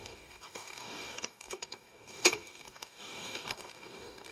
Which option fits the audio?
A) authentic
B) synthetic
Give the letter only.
B